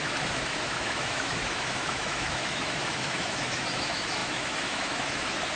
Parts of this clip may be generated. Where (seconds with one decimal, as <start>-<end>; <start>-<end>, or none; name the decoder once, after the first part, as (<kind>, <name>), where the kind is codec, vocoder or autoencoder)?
0.0-5.6 (autoencoder, DAC-VAE)